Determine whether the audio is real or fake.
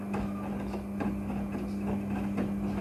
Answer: real